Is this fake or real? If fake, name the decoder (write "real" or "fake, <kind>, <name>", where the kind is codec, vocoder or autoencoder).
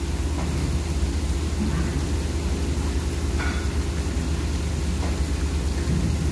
real